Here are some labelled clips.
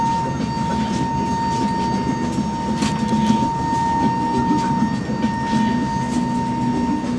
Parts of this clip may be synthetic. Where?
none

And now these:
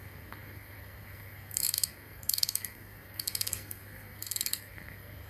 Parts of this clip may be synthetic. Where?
0.0-5.3 (codec, SNAC)

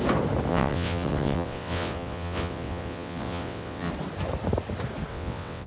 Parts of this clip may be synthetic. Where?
0.5-3.9 (vocoder, WaveNeXt); 5.1-5.7

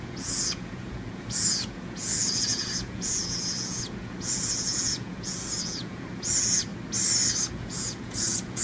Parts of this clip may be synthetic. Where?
0.0-6.7 (vocoder, Vocos); 7.5-8.6

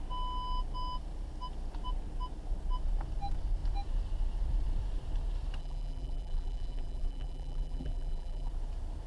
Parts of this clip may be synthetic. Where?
5.6-8.5 (vocoder, BigVGAN v2)

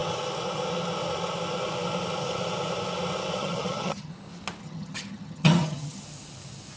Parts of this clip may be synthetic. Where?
3.4-4.1 (vocoder, HiFi-GAN); 4.6-6.0

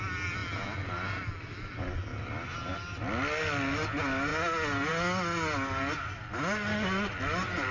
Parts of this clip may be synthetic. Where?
none

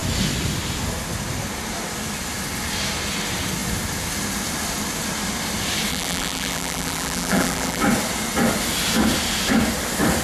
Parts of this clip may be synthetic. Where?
5.9-7.8 (vocoder, BigVGAN v2)